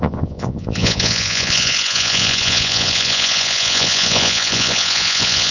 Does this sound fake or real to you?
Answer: fake